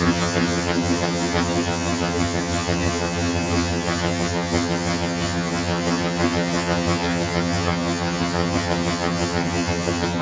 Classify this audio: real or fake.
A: fake